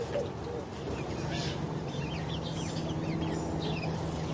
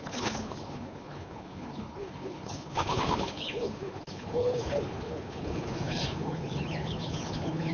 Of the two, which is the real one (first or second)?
first